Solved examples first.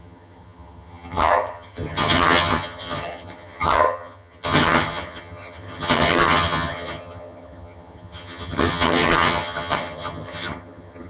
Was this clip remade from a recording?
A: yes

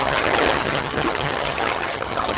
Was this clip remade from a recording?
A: yes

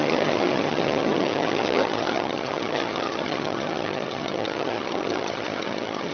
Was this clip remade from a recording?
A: yes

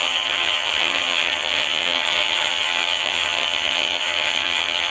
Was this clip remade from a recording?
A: yes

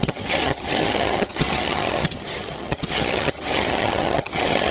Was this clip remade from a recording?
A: yes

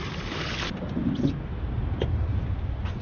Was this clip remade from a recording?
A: no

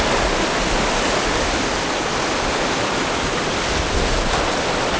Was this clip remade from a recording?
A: no